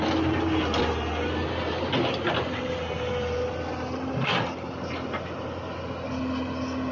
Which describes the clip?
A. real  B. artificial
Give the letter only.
A